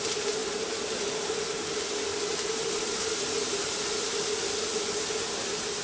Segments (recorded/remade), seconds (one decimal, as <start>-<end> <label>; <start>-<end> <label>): 0.0-5.8 recorded